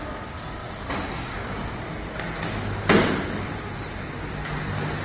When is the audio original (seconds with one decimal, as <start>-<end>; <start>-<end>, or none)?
0.0-5.0